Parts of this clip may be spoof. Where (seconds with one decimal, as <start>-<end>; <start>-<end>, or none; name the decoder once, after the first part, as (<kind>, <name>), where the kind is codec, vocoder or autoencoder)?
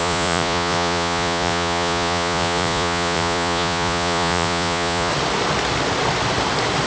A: 0.0-5.1 (vocoder, Vocos)